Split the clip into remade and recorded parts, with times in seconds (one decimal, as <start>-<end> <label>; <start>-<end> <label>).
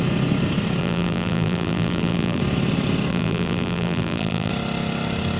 0.0-0.8 recorded; 0.8-2.4 remade; 2.4-3.1 recorded; 3.1-4.5 remade; 4.5-5.4 recorded